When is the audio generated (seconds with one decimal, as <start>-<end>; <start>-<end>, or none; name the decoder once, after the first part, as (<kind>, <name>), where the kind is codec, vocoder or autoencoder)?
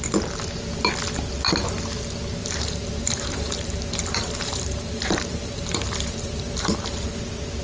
2.4-7.0 (vocoder, BigVGAN v2)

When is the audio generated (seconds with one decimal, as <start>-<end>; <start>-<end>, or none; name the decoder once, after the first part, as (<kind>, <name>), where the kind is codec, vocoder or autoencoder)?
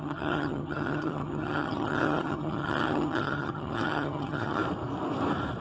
0.0-4.6 (vocoder, HiFi-GAN)